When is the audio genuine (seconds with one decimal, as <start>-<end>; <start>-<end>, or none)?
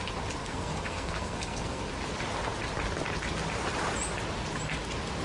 0.0-0.4; 1.8-5.2